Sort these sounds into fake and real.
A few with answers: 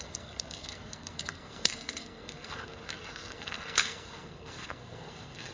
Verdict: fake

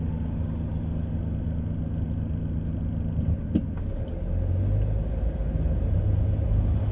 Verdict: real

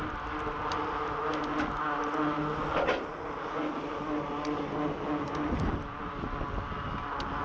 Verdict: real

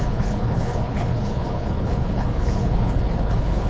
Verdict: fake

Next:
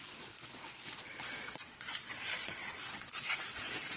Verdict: fake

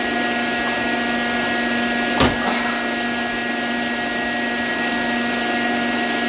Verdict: real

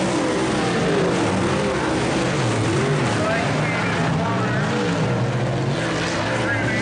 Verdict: real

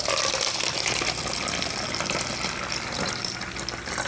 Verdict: real